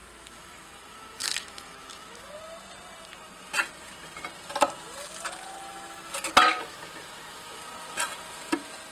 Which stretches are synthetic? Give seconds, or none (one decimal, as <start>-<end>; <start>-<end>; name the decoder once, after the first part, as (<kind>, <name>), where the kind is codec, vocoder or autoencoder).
0.0-2.4 (autoencoder, DAC-VAE); 6.5-7.6